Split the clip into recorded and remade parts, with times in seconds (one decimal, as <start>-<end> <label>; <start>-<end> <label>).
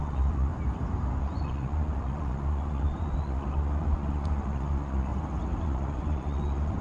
0.0-0.5 remade; 0.5-1.2 recorded; 1.2-5.1 remade; 5.1-5.6 recorded; 5.6-6.8 remade